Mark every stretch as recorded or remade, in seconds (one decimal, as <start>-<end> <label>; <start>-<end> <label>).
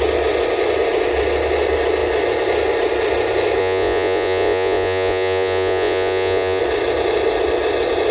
0.0-3.6 recorded; 3.6-6.6 remade; 6.6-8.1 recorded